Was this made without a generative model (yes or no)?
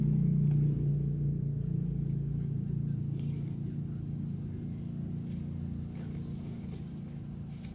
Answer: yes